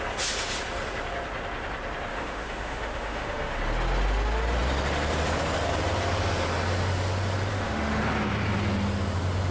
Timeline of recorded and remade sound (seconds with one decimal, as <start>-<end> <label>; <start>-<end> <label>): 0.0-2.1 recorded; 2.1-3.6 remade; 3.6-7.5 recorded; 7.5-8.0 remade; 8.0-9.5 recorded

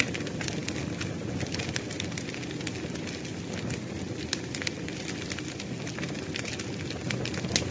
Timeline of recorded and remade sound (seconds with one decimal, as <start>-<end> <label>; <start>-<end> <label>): 0.0-7.7 recorded

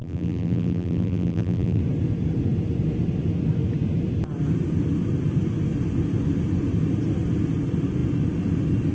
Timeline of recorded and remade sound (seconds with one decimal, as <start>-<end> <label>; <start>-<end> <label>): 0.0-1.8 remade; 1.8-8.9 recorded

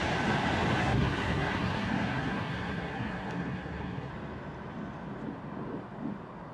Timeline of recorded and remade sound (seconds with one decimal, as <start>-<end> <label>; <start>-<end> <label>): 0.0-0.8 recorded; 0.8-4.1 remade; 4.1-6.5 recorded

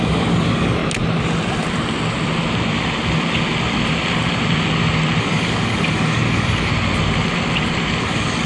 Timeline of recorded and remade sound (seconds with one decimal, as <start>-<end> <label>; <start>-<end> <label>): 0.0-0.8 remade; 0.8-5.2 recorded; 5.2-6.7 remade; 6.7-8.0 recorded; 8.0-8.5 remade

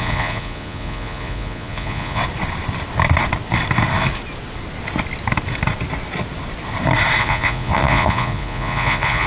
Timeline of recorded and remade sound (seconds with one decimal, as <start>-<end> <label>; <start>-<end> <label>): 0.0-2.2 remade; 2.2-7.2 recorded; 7.2-9.3 remade